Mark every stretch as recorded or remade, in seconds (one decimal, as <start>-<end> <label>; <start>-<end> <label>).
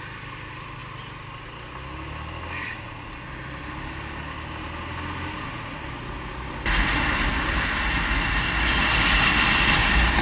0.0-10.2 recorded